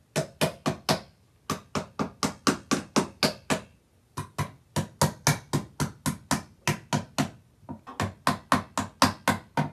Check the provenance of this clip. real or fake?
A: real